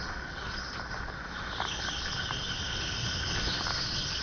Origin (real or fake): real